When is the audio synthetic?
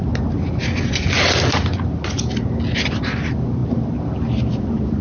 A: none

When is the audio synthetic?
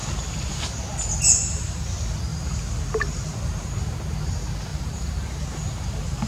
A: 0.0-0.6; 2.3-3.7; 4.7-6.3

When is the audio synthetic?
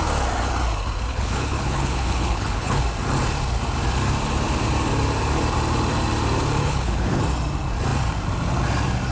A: 1.1-2.8; 6.6-7.2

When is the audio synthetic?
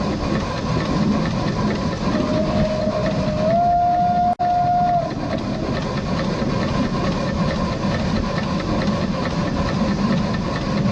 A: none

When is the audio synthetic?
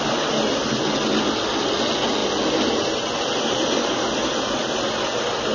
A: none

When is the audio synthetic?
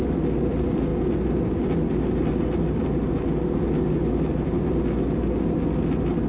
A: none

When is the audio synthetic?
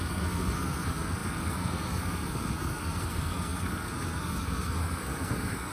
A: 0.0-5.7